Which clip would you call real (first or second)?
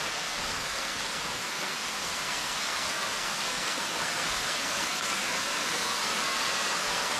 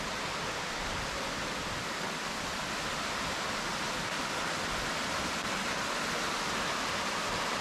second